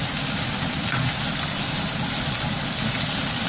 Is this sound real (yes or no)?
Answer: yes